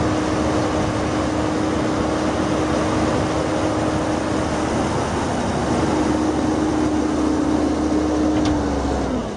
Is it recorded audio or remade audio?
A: recorded